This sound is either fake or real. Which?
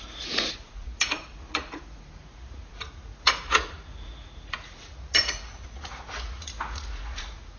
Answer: fake